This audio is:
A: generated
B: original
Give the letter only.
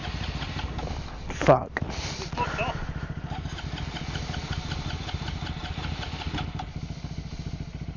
B